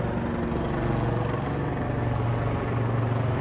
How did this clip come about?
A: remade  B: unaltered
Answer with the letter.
B